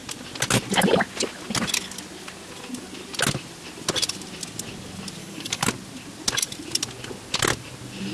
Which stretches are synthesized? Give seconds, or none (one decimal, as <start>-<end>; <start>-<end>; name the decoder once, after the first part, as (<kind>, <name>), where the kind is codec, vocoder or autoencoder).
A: 5.2-5.7 (codec, DAC)

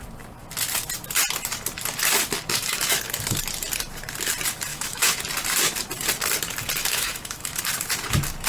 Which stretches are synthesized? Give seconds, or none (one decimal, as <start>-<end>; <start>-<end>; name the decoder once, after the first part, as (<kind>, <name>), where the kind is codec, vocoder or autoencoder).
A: 2.5-3.0 (autoencoder, DAC-VAE); 4.7-5.2; 6.8-7.6

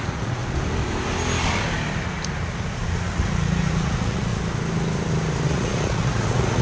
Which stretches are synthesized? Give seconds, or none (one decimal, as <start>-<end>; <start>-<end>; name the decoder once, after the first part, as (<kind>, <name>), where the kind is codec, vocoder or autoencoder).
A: 0.0-0.4 (vocoder, Vocos); 3.1-4.3; 5.5-6.6

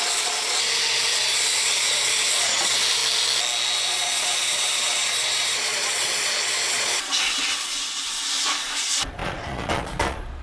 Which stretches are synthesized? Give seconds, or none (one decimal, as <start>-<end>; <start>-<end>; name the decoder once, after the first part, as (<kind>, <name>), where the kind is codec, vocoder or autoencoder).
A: 0.0-3.0 (vocoder, Vocos); 3.8-10.4